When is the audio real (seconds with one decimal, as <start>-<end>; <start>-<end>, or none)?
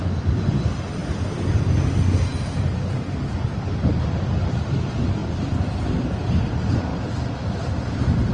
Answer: 0.0-8.3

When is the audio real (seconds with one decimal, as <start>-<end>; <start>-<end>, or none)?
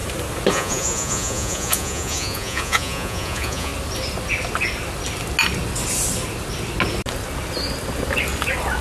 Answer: 0.0-0.5; 3.7-8.8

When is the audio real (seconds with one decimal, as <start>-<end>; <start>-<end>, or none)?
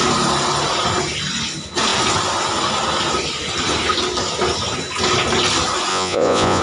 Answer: 0.0-5.9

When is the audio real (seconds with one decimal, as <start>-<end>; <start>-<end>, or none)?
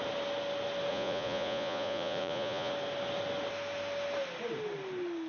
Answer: 0.0-0.9; 2.7-5.3